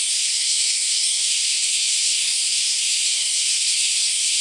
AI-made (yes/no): yes